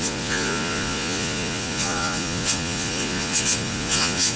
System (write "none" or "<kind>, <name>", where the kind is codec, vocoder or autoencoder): vocoder, Vocos